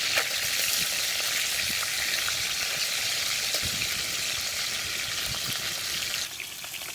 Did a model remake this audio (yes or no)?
no